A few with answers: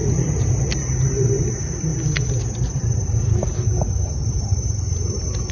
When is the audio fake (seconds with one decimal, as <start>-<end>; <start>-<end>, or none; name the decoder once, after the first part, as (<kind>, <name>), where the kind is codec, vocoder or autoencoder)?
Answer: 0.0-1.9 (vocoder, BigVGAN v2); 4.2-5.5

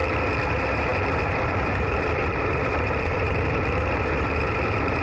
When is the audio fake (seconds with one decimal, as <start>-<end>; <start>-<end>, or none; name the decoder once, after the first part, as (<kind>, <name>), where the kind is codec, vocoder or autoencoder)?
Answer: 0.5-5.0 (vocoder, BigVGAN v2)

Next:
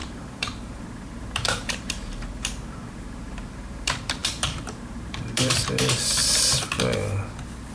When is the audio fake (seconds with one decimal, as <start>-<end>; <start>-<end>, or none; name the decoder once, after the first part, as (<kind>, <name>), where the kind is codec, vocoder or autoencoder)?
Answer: 0.0-6.2 (vocoder, BigVGAN v2)

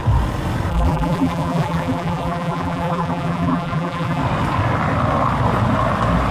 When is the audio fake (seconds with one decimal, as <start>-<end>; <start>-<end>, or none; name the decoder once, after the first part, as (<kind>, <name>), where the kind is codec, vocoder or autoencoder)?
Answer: 0.7-4.2 (vocoder, BigVGAN v2)